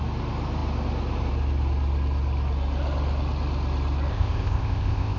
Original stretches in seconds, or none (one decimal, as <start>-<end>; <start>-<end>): 0.0-4.1